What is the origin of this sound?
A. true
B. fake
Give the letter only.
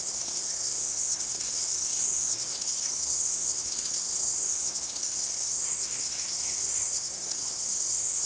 B